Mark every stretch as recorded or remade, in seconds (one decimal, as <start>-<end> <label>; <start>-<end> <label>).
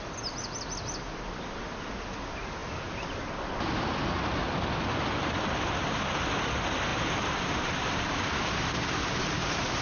0.0-6.9 recorded; 6.9-9.8 remade